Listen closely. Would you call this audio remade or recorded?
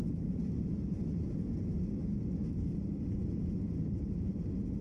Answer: recorded